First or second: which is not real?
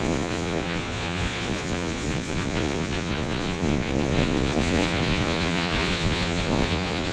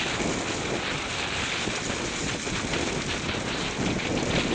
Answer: first